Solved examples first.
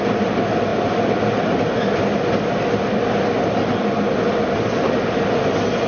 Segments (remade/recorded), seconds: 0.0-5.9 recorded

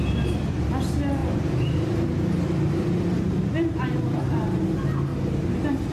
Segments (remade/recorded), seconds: 0.0-1.2 recorded; 1.2-2.4 remade; 2.4-3.1 recorded; 3.1-4.6 remade; 4.6-5.1 recorded; 5.1-5.9 remade